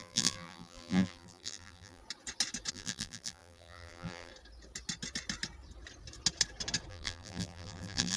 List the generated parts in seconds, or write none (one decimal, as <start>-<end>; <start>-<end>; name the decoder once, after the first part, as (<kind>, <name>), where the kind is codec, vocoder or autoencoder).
0.0-2.0 (vocoder, BigVGAN v2); 2.7-4.3; 6.9-8.2